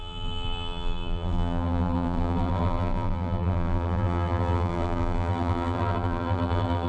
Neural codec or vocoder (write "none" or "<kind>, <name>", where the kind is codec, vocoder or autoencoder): vocoder, BigVGAN v2